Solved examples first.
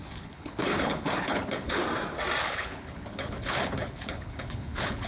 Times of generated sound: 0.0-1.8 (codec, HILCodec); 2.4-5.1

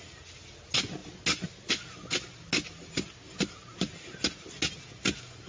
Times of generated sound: none

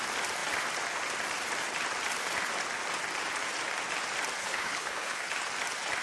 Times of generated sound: 4.4-5.3 (codec, HILCodec)

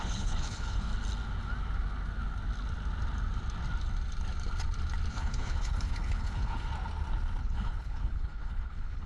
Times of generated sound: 0.0-0.9 (codec, HILCodec); 5.1-6.7; 7.4-9.1

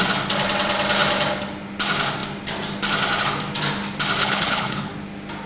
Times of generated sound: 4.2-4.9 (codec, HILCodec)

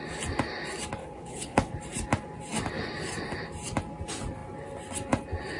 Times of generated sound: 1.0-1.7 (codec, HILCodec)